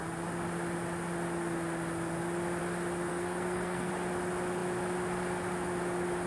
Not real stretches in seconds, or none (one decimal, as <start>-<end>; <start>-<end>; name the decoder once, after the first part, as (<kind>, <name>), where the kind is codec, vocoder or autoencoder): 3.1-3.9 (codec, SNAC)

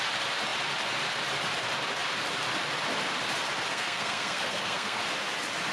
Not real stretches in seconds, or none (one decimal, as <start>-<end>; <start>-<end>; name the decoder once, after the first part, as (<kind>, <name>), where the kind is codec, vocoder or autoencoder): 3.7-5.0 (codec, SNAC)

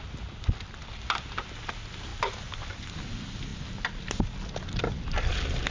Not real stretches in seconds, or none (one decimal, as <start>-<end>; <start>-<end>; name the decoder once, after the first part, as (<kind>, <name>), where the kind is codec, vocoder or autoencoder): 0.0-2.1 (vocoder, BigVGAN v2); 2.7-3.5; 4.8-5.7